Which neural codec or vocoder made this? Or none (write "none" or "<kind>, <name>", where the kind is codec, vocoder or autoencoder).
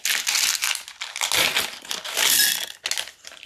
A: none